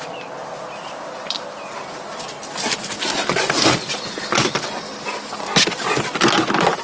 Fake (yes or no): no